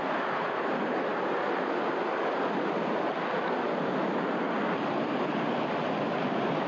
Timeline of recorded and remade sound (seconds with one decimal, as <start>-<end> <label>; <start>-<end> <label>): 0.0-6.7 recorded